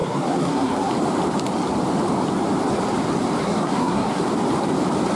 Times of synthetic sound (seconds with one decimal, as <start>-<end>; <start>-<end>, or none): 0.0-0.9; 3.4-4.2